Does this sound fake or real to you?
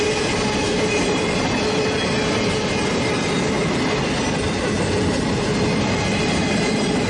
real